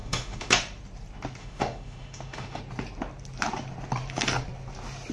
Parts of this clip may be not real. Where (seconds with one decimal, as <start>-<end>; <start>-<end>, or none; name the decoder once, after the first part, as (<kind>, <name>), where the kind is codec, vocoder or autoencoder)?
0.0-0.5 (autoencoder, DAC-VAE); 1.4-2.6